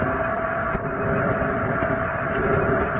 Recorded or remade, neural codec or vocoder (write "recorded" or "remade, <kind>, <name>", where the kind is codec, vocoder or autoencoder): remade, vocoder, BigVGAN v2